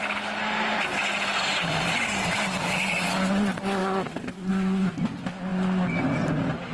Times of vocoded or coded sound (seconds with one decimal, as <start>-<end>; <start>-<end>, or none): 3.8-4.5